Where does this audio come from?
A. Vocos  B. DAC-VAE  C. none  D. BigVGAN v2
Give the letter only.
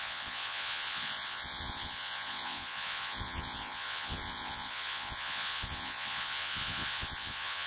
A